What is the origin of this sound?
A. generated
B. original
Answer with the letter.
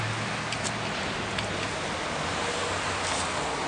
B